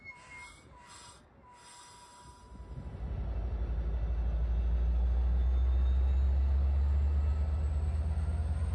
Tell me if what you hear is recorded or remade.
recorded